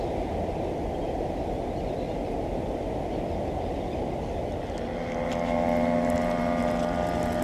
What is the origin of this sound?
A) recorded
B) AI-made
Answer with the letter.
A